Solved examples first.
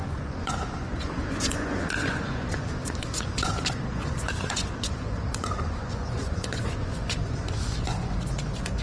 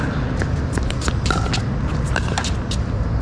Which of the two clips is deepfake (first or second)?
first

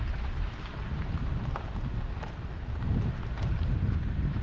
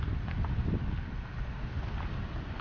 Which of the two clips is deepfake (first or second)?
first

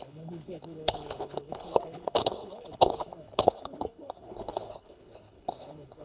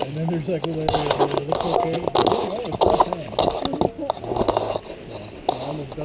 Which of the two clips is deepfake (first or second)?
first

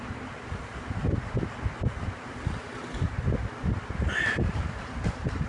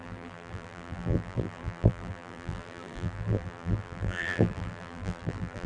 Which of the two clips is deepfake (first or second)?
second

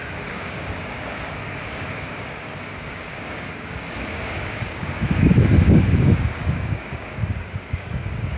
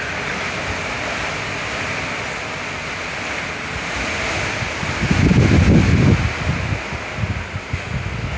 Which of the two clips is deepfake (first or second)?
first